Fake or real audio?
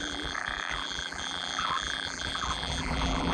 fake